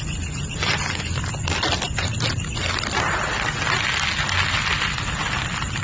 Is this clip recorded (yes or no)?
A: yes